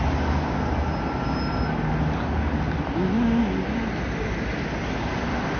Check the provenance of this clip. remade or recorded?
recorded